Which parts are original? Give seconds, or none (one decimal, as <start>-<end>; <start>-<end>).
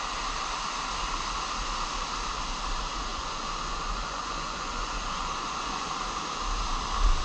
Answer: 0.0-3.1; 5.9-7.2